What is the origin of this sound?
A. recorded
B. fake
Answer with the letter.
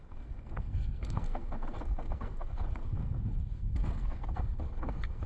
B